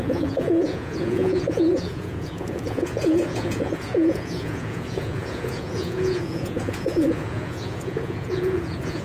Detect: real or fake fake